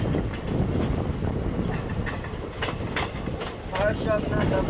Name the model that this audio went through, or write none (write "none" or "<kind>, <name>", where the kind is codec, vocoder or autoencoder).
none